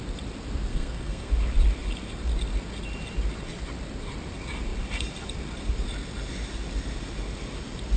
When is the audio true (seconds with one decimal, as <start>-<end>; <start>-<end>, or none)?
0.0-0.7; 1.3-8.0